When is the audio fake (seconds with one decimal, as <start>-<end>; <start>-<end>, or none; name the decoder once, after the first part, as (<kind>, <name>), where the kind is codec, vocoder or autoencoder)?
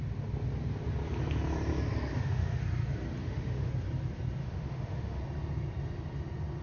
2.1-2.6 (autoencoder, DAC-VAE); 3.2-3.7; 4.4-5.2